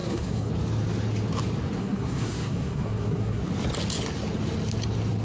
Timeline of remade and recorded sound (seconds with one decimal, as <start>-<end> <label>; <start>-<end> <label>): 0.0-0.5 remade; 0.5-1.8 recorded; 1.8-3.4 remade; 3.4-5.2 recorded